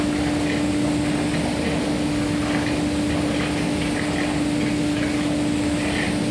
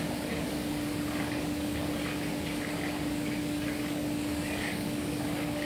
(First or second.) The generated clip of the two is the second